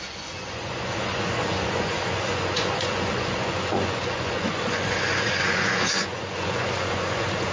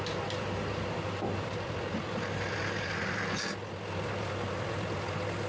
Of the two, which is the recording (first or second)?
second